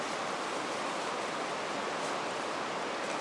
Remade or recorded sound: recorded